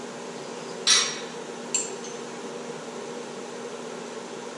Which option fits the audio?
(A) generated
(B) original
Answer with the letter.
B